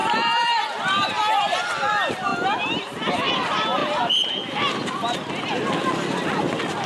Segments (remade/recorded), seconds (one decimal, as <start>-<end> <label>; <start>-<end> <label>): 0.0-2.3 remade; 2.3-3.1 recorded; 3.1-6.9 remade